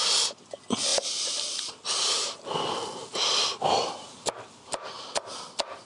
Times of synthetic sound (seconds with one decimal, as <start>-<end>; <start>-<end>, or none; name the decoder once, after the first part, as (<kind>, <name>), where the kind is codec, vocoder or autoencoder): none